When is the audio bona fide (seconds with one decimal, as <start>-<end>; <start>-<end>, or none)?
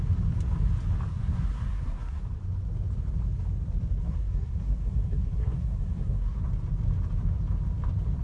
0.0-1.1; 2.2-4.0; 6.4-8.2